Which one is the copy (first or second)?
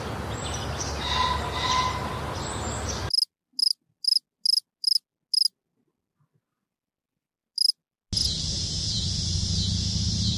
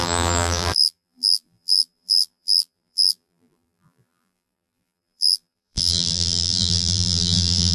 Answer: second